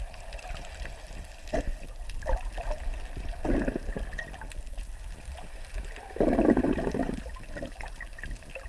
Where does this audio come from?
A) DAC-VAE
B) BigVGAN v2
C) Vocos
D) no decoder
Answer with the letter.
D